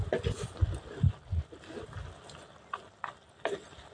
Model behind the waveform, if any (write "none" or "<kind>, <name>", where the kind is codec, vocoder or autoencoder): none